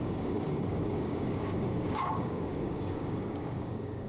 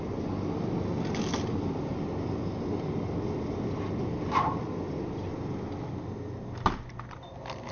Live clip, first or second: second